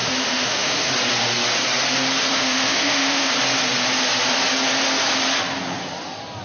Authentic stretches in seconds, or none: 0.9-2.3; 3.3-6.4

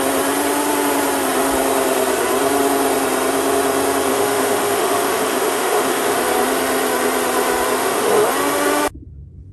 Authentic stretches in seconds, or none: 0.0-4.1; 6.2-7.8; 8.3-9.5

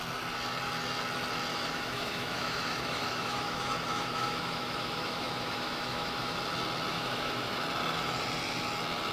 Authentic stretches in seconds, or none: 0.0-1.5; 6.4-6.9; 7.6-9.1